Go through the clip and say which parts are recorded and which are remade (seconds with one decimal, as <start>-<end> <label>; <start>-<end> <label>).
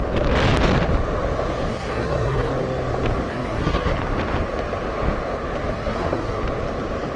0.0-1.7 recorded; 1.7-2.5 remade; 2.5-3.3 recorded; 3.3-3.9 remade; 3.9-5.7 recorded; 5.7-6.4 remade; 6.4-7.2 recorded